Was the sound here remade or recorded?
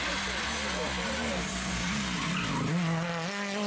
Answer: recorded